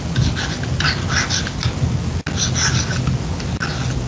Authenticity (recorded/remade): recorded